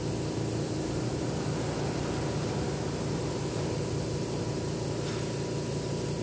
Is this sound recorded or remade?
recorded